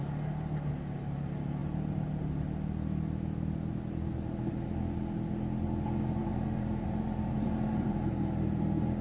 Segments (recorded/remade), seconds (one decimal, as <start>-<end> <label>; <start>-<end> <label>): 0.0-6.2 recorded; 6.2-8.1 remade; 8.1-9.0 recorded